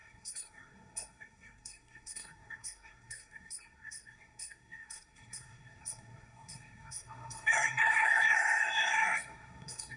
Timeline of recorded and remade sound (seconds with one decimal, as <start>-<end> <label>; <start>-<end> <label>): 0.0-10.0 remade